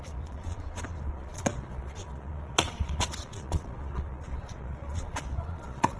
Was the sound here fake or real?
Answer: fake